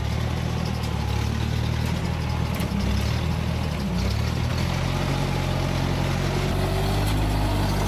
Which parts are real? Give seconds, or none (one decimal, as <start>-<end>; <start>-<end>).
0.0-2.0; 2.9-7.9